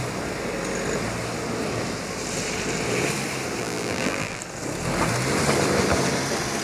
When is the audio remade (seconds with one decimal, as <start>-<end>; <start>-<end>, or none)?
3.6-4.4